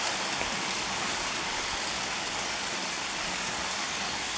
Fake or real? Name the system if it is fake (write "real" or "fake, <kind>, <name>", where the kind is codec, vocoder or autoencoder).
fake, codec, DAC